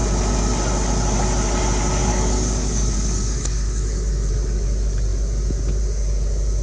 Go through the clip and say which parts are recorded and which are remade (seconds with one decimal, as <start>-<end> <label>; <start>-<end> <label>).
0.0-2.1 recorded; 2.1-4.3 remade; 4.3-6.6 recorded